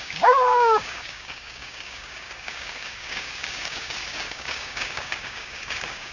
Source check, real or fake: fake